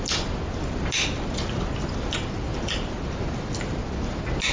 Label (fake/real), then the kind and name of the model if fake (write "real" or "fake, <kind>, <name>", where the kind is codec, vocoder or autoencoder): real